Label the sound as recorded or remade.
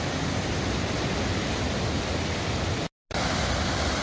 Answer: recorded